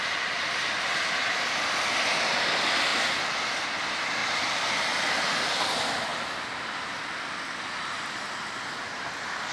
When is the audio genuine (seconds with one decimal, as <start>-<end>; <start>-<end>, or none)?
0.0-9.5